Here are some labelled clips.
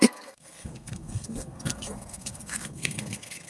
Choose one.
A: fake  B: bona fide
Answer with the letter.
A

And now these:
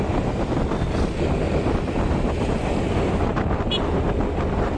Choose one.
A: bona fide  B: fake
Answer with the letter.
A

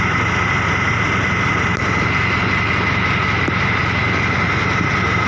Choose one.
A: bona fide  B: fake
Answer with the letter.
A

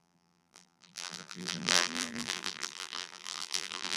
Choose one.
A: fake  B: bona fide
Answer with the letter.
A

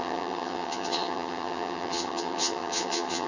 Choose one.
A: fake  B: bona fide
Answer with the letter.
A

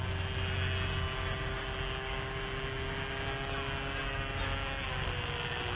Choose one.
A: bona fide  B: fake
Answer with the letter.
A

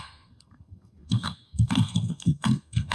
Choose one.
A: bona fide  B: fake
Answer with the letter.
B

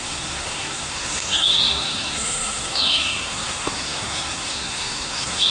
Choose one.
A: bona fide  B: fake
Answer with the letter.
B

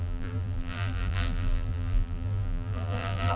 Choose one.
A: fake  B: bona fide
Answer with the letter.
A